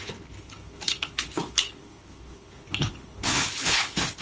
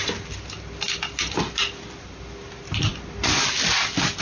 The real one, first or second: second